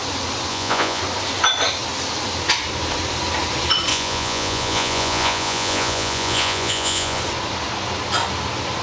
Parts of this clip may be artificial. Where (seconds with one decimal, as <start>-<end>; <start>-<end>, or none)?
0.5-1.0; 3.9-7.2